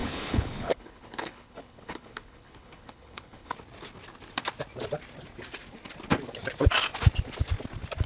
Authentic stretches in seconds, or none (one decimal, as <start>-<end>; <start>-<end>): 3.5-8.1